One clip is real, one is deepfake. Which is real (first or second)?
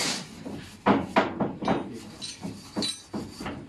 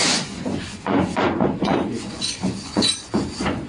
first